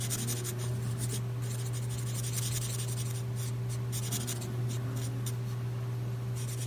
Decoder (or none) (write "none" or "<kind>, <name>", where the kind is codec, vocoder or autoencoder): none